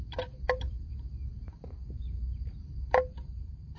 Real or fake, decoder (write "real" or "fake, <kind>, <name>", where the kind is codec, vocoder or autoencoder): fake, vocoder, BigVGAN v2